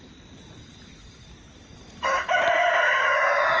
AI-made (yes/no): no